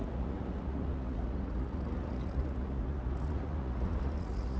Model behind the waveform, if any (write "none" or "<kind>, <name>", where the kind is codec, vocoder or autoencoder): vocoder, Vocos